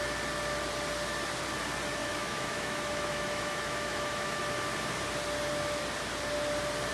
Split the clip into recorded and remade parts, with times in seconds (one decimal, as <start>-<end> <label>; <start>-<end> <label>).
0.0-2.0 recorded; 2.0-4.4 remade; 4.4-6.9 recorded